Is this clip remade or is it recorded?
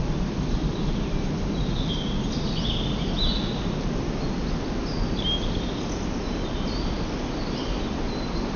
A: recorded